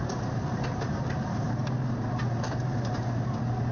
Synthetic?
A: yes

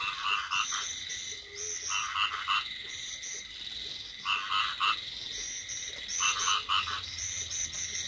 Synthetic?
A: no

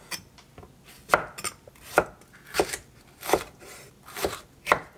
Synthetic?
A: no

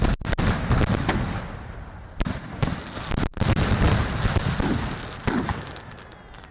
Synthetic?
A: no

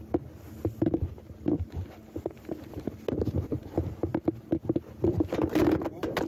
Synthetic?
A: no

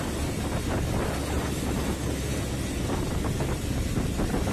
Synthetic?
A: no